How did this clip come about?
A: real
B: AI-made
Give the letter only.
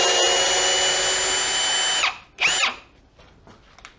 A